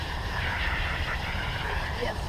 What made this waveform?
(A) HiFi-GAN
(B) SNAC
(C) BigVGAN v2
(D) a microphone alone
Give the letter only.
C